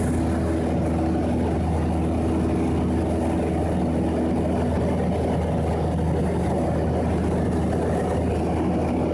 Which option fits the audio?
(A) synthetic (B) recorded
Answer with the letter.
B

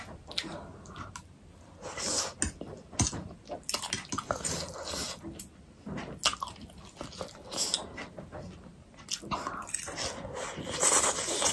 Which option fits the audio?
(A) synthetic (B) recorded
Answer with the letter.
B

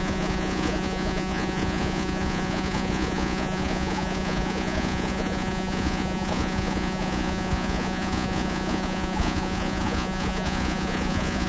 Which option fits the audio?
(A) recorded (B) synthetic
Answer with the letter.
B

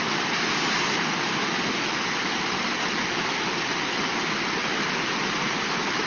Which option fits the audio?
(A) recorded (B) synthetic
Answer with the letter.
A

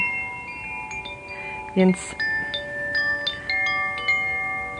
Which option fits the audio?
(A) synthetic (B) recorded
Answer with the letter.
B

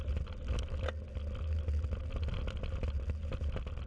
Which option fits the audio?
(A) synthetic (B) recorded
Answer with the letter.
B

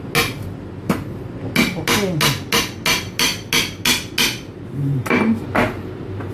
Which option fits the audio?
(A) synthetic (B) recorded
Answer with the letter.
B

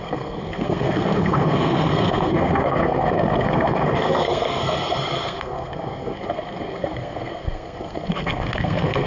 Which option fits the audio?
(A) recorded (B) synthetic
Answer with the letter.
B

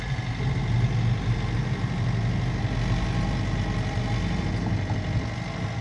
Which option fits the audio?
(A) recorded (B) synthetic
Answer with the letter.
A